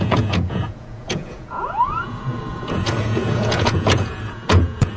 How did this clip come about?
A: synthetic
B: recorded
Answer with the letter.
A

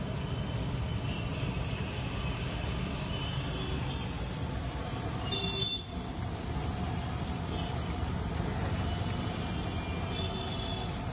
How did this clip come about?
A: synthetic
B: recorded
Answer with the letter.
B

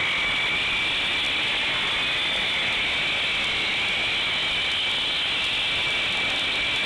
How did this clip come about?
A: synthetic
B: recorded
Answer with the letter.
B